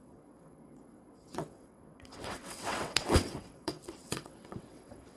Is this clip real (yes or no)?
no